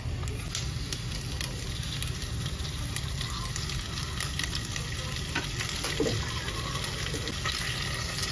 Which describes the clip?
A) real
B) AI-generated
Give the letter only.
A